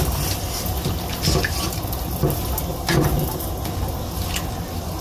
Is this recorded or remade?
recorded